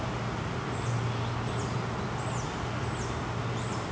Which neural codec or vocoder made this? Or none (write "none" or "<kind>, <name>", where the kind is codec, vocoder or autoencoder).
none